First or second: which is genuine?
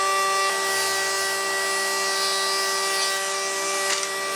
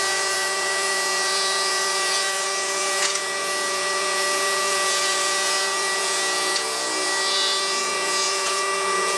first